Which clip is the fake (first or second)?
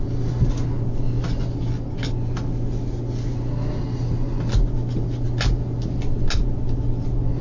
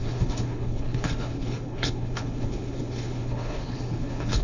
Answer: second